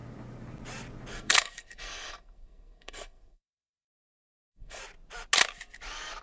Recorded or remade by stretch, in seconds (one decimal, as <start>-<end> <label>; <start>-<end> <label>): 0.0-1.1 recorded; 1.1-4.8 remade; 4.8-6.2 recorded